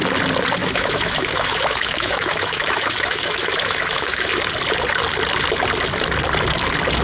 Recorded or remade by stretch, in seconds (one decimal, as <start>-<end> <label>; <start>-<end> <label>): 0.0-0.6 recorded; 0.6-4.3 remade; 4.3-7.0 recorded